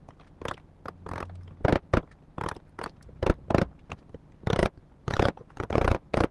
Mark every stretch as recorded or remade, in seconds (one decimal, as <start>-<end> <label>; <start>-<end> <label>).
0.0-4.6 recorded; 4.6-6.3 remade